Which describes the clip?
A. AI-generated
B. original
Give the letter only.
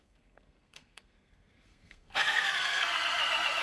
A